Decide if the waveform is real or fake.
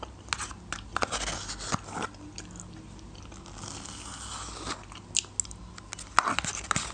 real